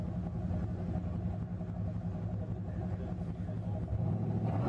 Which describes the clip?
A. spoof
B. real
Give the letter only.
B